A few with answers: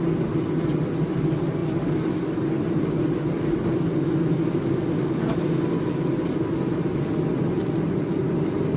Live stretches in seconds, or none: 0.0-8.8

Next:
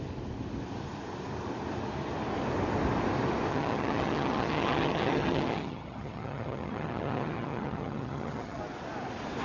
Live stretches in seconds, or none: 0.0-3.5; 8.6-9.4

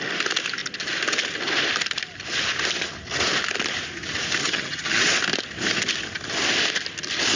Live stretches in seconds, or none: 0.0-4.4; 5.0-7.3

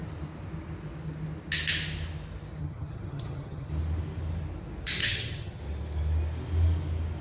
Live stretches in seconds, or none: 0.0-2.6; 3.7-5.0; 5.6-7.2

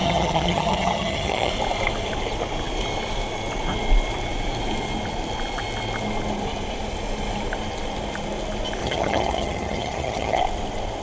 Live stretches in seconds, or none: 1.5-8.8; 10.4-11.0